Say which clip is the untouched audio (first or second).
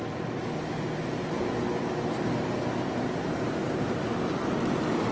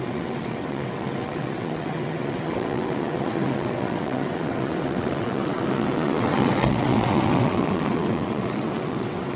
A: first